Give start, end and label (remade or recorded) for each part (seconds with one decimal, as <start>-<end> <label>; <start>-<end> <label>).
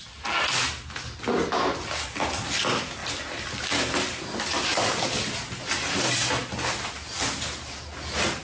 0.0-8.4 recorded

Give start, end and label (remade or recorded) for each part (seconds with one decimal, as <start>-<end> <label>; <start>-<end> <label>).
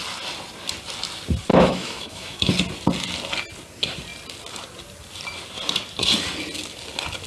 0.0-1.5 recorded; 1.5-2.4 remade; 2.4-7.3 recorded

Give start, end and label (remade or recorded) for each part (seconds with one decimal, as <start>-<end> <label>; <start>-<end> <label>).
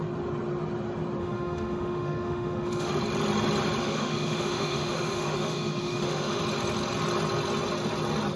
0.0-1.2 recorded; 1.2-2.9 remade; 2.9-3.8 recorded; 3.8-6.4 remade; 6.4-8.4 recorded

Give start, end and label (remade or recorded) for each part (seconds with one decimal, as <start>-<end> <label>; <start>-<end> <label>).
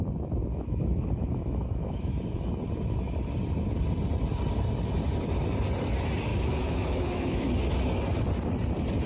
0.0-0.5 recorded; 0.5-2.5 remade; 2.5-6.3 recorded; 6.3-7.5 remade; 7.5-9.1 recorded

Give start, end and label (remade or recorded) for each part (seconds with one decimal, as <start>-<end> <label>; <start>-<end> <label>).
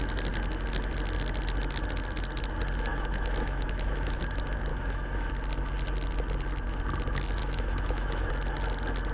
0.0-2.9 recorded; 2.9-4.2 remade; 4.2-4.7 recorded; 4.7-5.3 remade; 5.3-7.4 recorded; 7.4-8.3 remade; 8.3-9.1 recorded